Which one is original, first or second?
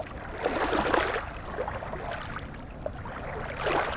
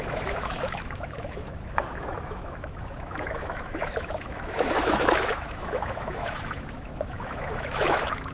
first